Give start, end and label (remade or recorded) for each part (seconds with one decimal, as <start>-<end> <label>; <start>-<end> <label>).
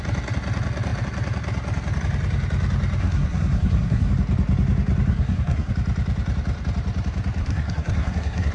0.0-3.0 recorded; 3.0-4.1 remade; 4.1-5.1 recorded; 5.1-5.7 remade; 5.7-7.4 recorded; 7.4-8.5 remade